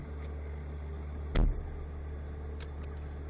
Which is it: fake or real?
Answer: real